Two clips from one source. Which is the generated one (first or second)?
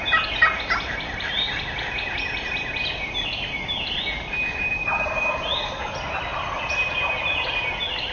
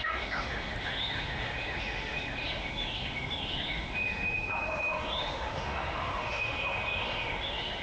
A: second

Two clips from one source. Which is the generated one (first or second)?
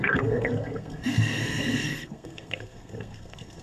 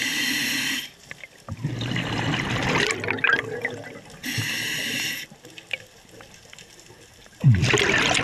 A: first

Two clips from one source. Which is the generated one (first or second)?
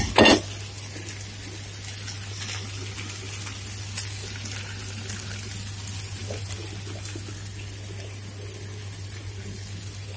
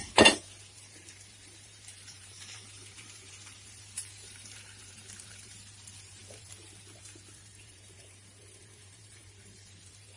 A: second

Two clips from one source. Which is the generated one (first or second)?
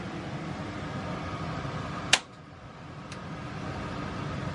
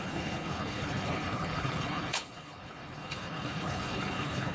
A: second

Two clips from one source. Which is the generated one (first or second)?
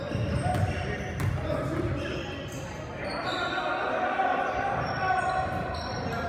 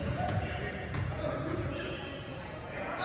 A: second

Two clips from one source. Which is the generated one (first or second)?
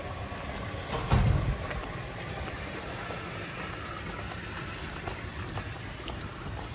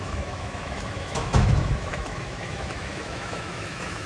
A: second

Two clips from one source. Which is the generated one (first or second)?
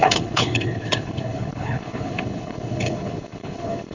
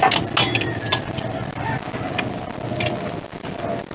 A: first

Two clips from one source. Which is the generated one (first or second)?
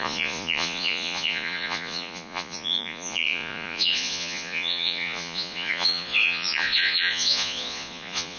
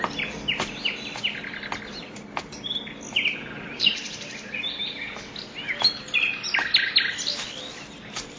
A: first